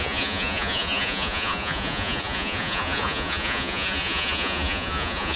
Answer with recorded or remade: remade